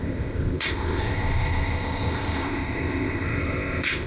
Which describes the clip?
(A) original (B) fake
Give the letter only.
B